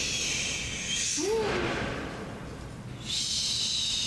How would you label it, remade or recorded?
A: recorded